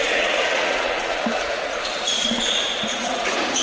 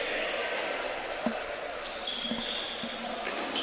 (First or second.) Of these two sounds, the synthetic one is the first